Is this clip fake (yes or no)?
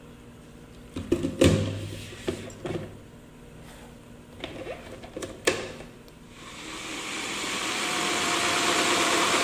no